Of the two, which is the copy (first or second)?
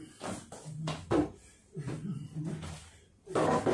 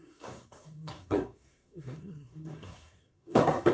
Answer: second